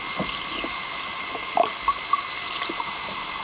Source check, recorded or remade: recorded